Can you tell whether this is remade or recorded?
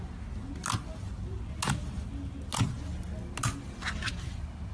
recorded